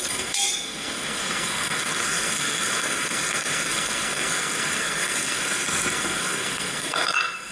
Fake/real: fake